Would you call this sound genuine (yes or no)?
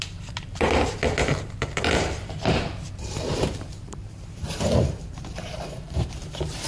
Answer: no